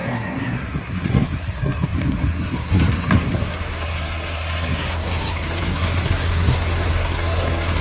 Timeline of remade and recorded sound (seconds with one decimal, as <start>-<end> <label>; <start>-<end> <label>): 0.0-7.8 remade